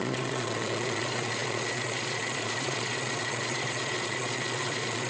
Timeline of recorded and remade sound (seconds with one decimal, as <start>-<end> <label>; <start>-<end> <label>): 0.0-5.1 remade